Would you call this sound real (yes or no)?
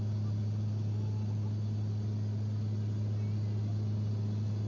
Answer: yes